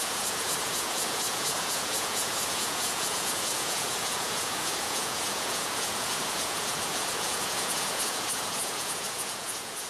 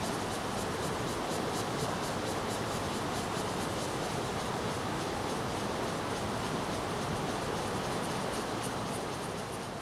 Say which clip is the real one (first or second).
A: second